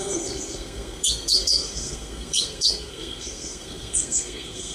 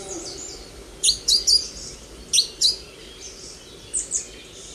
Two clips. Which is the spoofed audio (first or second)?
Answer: first